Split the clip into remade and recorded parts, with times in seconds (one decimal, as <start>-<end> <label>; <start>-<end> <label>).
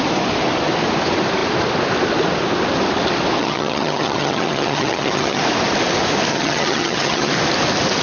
0.0-3.4 recorded; 3.4-5.4 remade; 5.4-6.3 recorded; 6.3-7.3 remade; 7.3-8.0 recorded